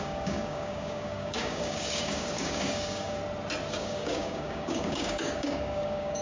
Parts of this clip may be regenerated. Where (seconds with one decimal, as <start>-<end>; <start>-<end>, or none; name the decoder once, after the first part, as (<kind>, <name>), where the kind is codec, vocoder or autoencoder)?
0.0-3.2 (codec, DAC); 3.7-6.2